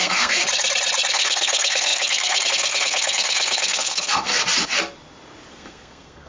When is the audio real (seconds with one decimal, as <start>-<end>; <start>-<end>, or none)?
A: 0.4-1.1; 4.4-5.5